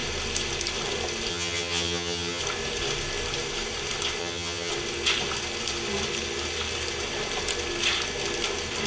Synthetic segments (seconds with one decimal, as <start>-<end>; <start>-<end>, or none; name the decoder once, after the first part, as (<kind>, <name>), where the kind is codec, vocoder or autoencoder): 1.3-2.4 (vocoder, HiFi-GAN); 4.2-4.7